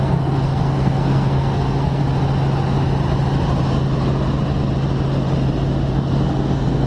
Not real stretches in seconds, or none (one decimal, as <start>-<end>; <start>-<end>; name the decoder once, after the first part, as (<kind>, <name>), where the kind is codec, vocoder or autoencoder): 0.0-2.0 (codec, SNAC); 5.9-6.9